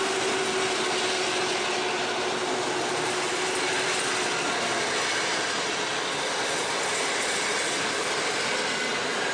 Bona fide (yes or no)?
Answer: yes